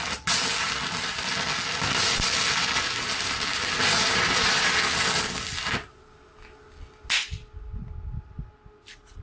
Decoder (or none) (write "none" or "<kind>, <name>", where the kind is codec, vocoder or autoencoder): none